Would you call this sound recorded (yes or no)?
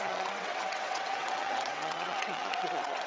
no